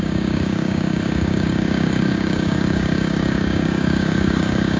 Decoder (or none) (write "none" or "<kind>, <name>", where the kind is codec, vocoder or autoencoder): codec, DAC